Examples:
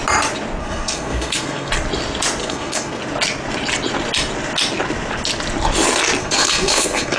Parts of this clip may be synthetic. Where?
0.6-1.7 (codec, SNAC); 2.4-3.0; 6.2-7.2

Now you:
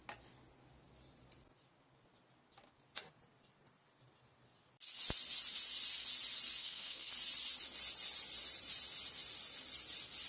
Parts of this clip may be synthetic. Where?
6.6-7.1 (codec, SNAC)

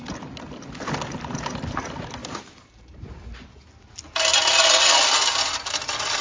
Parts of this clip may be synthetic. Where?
2.2-3.6 (vocoder, BigVGAN v2); 4.3-6.2

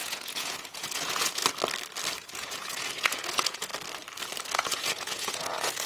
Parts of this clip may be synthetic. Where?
0.0-1.4 (vocoder, Vocos); 2.2-3.7; 4.4-5.9